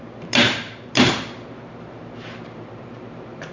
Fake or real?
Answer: fake